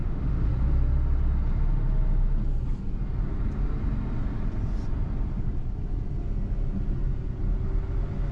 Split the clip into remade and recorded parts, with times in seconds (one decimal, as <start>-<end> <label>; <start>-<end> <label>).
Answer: 0.0-0.5 remade; 0.5-8.3 recorded